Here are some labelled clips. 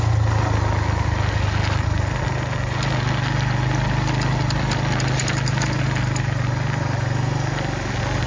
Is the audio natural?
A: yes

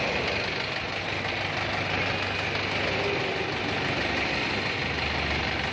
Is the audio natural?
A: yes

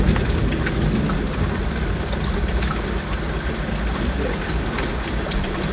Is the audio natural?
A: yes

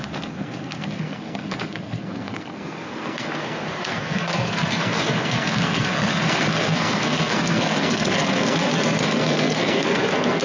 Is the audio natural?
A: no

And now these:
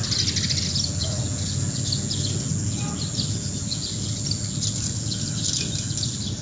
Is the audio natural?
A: yes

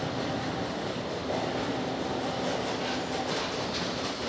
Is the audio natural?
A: yes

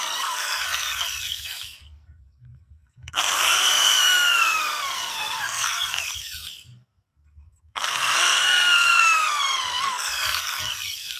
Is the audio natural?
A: no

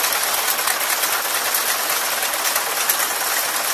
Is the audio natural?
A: yes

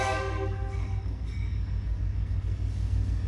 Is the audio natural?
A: no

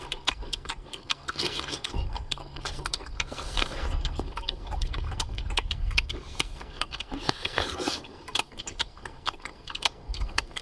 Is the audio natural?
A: no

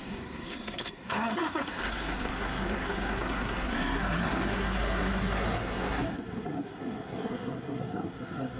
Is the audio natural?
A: no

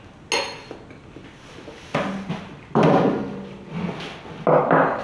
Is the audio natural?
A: yes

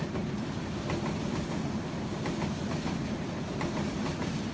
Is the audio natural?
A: yes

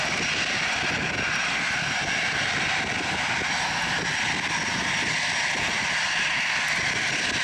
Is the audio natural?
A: yes